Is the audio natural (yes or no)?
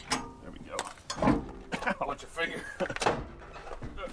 yes